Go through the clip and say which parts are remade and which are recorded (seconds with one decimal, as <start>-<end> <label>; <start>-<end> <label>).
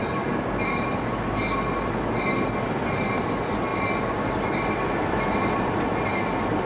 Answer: 0.0-6.7 recorded